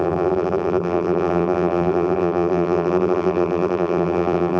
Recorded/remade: remade